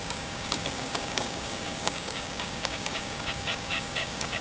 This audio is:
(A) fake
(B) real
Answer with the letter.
A